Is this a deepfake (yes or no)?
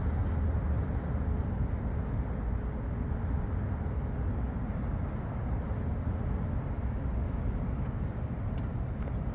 no